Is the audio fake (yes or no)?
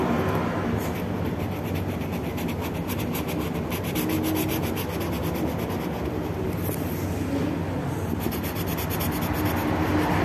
no